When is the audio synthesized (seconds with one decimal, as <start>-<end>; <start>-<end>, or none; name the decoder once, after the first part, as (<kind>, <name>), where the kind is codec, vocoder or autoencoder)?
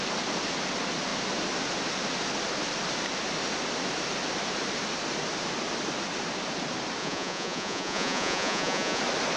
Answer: 7.0-9.0 (vocoder, Vocos)